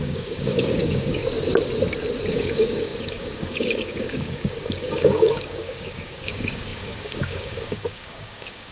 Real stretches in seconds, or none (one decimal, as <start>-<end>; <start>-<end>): 1.2-2.3